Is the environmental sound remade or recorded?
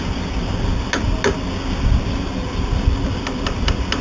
recorded